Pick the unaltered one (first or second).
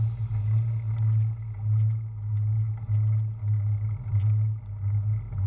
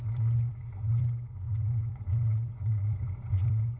first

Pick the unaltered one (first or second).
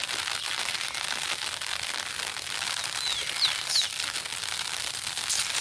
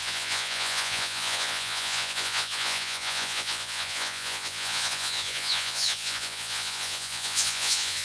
first